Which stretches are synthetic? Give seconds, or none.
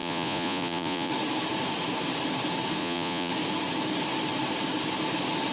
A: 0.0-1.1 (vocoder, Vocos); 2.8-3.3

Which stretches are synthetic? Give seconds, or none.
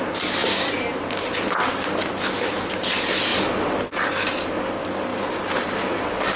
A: 5.1-5.9 (vocoder, BigVGAN v2)